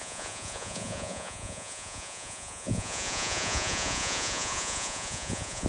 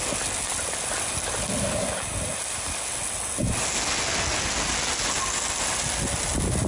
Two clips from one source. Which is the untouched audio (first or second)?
second